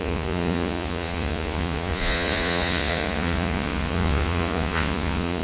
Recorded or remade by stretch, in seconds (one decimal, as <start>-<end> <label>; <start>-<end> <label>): 0.0-5.4 remade